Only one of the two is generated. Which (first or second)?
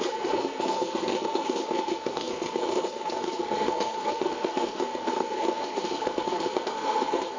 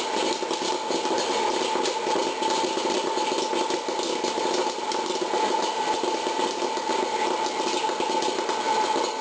first